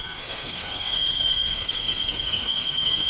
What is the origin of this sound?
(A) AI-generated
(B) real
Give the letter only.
A